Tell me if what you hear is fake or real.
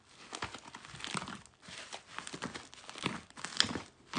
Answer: real